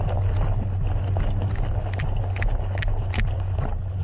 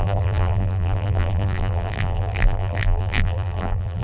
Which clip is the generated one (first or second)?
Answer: second